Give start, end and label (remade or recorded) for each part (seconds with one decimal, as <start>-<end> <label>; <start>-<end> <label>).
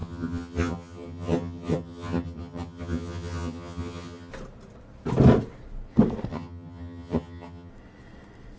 0.0-4.3 remade; 4.3-6.3 recorded; 6.3-7.7 remade; 7.7-8.6 recorded